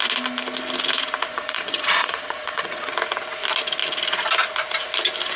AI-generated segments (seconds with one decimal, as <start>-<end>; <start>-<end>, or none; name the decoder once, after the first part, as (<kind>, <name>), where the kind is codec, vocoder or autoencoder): 1.3-2.9 (vocoder, Vocos)